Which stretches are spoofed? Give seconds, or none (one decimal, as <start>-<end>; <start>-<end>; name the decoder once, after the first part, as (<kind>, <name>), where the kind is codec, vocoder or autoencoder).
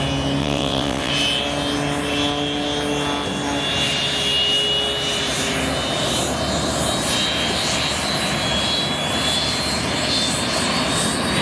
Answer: 0.4-1.1 (vocoder, WaveNeXt)